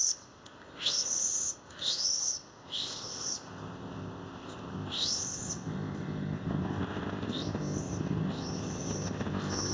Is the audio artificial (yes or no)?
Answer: yes